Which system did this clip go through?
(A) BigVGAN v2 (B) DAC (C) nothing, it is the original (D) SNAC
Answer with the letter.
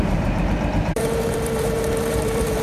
A